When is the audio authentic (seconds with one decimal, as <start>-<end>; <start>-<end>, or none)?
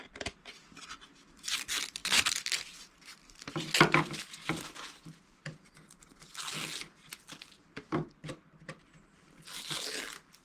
0.0-10.4